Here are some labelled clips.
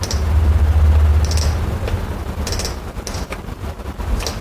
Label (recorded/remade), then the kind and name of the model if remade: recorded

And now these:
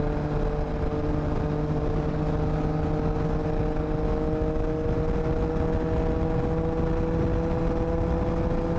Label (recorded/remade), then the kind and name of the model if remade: recorded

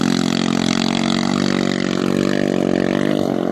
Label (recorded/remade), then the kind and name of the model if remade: recorded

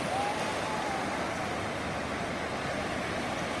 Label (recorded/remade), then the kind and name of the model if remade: recorded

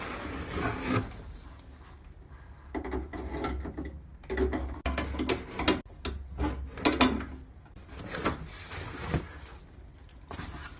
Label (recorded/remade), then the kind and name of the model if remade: recorded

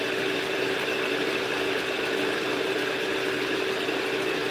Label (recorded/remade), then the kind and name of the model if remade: recorded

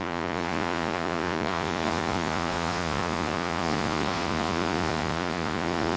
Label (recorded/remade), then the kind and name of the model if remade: remade, vocoder, Vocos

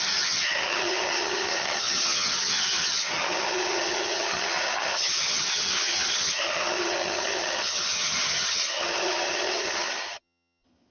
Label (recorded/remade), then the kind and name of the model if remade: remade, vocoder, HiFi-GAN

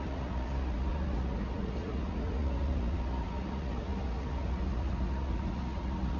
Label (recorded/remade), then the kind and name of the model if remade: remade, vocoder, Vocos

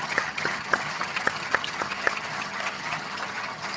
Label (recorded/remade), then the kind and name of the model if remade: remade, vocoder, HiFi-GAN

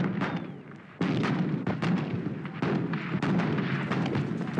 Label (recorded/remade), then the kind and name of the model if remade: recorded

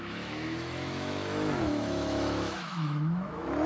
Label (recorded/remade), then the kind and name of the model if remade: remade, autoencoder, DAC-VAE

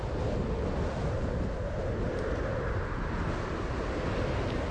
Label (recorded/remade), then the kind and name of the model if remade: recorded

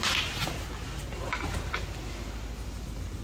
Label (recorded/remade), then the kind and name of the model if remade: recorded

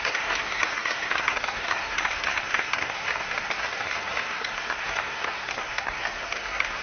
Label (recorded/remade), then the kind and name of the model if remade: remade, codec, SNAC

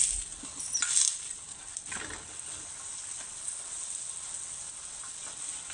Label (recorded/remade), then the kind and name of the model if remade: recorded